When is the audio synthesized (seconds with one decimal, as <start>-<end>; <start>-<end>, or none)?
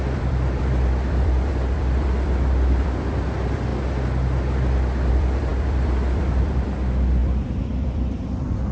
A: 0.0-3.7; 5.1-8.7